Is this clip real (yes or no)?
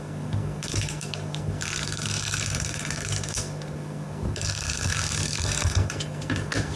no